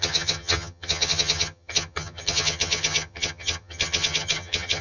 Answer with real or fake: fake